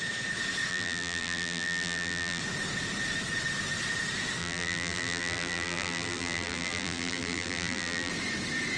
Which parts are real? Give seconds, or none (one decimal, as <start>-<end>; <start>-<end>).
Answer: 0.0-0.7; 2.4-4.4; 8.1-8.8